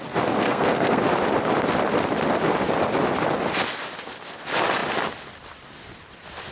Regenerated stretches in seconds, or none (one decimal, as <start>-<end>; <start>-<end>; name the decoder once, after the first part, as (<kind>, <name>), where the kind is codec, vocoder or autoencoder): 0.4-1.0 (codec, SNAC)

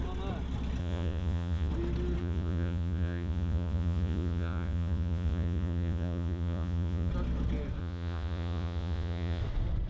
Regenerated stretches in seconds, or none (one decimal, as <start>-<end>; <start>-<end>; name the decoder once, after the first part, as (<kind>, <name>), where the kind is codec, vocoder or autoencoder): 0.8-1.7 (vocoder, Vocos); 2.2-7.1; 7.8-9.4

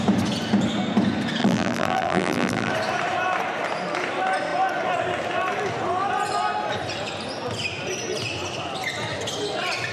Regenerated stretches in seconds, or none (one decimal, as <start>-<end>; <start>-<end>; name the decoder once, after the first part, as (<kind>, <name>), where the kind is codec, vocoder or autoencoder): 1.4-2.7 (vocoder, BigVGAN v2)

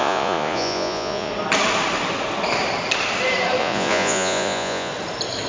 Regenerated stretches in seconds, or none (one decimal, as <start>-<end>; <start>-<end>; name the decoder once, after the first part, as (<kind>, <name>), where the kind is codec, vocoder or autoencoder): 0.0-1.3 (vocoder, Vocos); 3.6-4.9

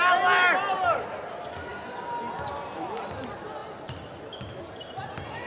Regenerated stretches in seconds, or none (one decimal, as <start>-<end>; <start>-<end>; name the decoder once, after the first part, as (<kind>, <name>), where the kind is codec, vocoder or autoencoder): none

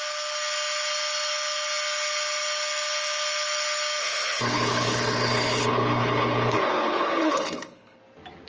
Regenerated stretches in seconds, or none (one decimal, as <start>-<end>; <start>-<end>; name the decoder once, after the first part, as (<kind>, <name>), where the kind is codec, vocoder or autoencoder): 4.0-8.0 (codec, HILCodec)